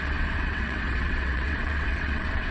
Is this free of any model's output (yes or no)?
no